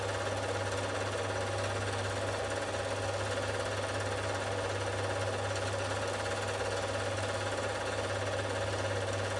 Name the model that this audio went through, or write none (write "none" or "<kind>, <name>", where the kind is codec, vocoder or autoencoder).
none